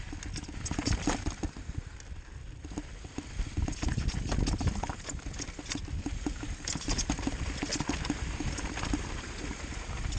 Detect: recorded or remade recorded